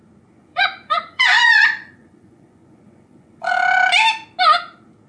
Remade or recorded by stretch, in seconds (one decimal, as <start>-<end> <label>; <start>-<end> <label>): 0.0-0.4 recorded; 0.4-3.5 remade; 3.5-5.1 recorded